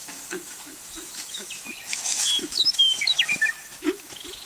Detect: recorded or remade remade